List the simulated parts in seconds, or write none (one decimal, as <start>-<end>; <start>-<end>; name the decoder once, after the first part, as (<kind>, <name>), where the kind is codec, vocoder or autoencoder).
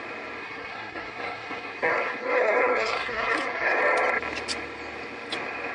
0.4-3.8 (codec, SNAC)